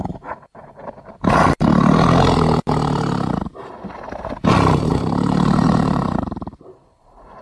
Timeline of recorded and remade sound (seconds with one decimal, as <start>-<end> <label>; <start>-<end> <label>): 0.0-4.9 recorded; 4.9-7.4 remade